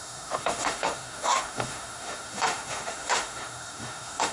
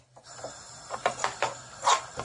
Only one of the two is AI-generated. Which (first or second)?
first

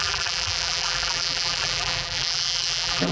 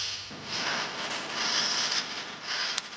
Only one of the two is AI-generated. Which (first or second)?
first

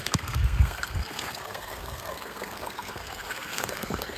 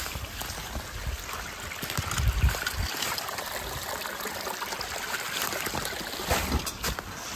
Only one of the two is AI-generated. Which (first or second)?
first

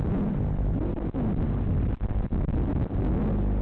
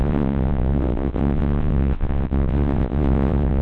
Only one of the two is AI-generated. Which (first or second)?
second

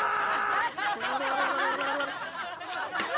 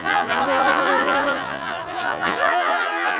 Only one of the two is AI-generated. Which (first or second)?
second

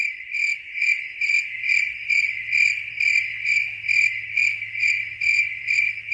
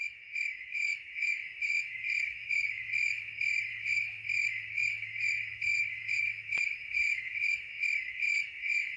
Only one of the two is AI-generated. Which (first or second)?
second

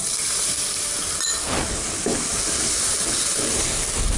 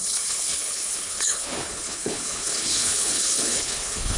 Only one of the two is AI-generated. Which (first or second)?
second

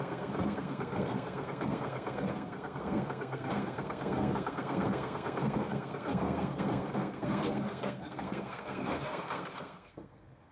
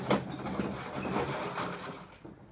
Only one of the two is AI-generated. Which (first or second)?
first